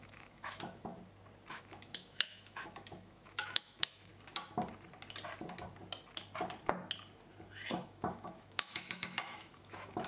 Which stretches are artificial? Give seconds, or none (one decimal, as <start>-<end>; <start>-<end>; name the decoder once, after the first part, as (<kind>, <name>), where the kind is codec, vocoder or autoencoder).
0.0-0.9 (autoencoder, DAC-VAE); 1.5-4.1; 7.7-10.1